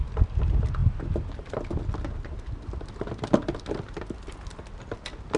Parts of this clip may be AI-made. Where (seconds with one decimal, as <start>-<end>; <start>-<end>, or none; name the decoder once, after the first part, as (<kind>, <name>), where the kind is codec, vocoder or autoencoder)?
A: none